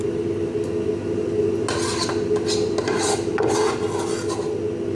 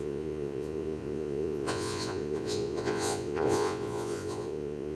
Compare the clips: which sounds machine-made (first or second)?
second